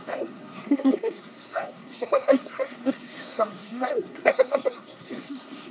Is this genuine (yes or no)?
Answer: no